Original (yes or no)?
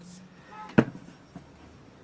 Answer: yes